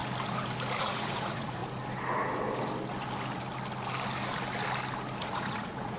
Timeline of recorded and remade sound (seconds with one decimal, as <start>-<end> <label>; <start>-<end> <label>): 0.0-0.8 recorded; 0.8-1.6 remade; 1.6-5.2 recorded; 5.2-6.0 remade